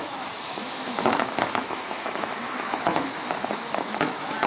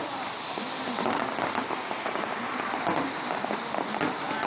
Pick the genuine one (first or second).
second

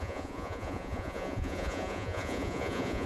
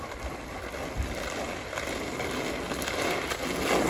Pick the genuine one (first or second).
second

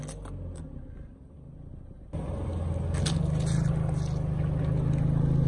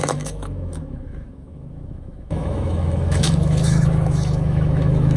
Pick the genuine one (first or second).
first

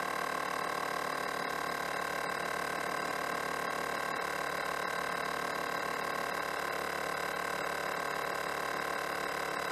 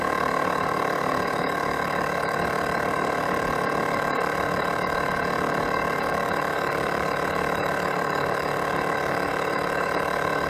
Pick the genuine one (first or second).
first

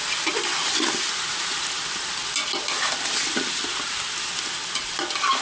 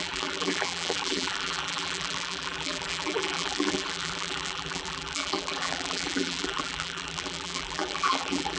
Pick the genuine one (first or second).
first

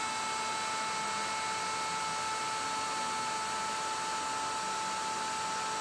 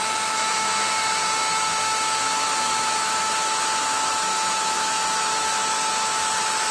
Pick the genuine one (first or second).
first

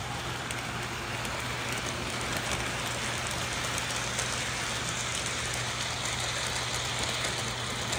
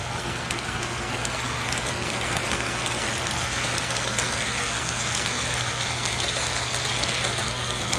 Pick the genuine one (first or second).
first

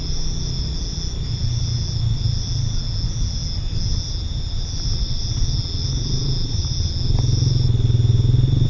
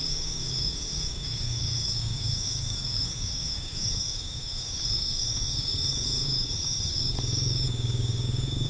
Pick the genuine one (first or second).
first